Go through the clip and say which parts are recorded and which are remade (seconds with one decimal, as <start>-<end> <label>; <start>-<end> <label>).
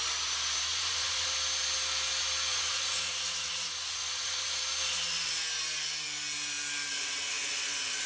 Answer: 0.0-0.7 recorded; 0.7-1.3 remade; 1.3-2.5 recorded; 2.5-4.6 remade; 4.6-6.9 recorded; 6.9-8.1 remade